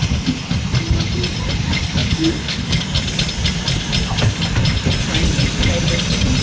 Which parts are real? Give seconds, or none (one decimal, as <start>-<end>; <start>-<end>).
0.0-2.0; 2.8-6.4